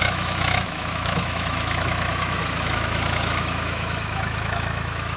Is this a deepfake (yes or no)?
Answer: yes